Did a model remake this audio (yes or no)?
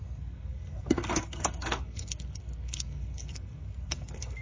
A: yes